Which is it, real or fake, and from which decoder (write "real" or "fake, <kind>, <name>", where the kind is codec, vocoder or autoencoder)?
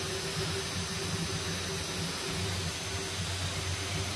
real